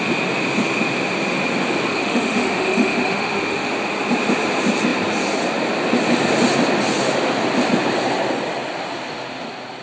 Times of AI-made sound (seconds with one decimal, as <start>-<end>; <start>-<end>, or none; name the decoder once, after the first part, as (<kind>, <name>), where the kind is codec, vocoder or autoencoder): 1.9-3.7 (autoencoder, DAC-VAE)